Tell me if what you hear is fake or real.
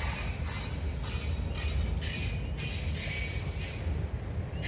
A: real